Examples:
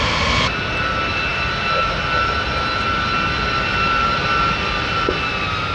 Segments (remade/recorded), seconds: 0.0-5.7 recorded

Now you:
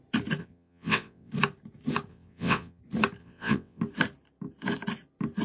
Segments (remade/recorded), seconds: 0.0-0.4 recorded; 0.4-1.3 remade; 1.3-2.1 recorded; 2.1-2.8 remade; 2.8-3.2 recorded; 3.2-3.8 remade; 3.8-5.4 recorded

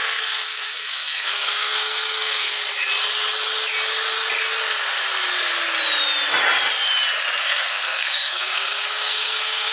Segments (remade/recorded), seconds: 0.0-2.6 remade; 2.6-7.4 recorded; 7.4-9.7 remade

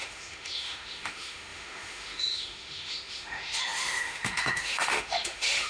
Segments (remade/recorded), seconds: 0.0-5.7 remade

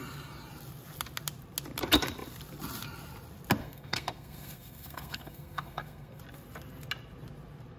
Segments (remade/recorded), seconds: 0.0-3.6 recorded; 3.6-6.2 remade; 6.2-7.8 recorded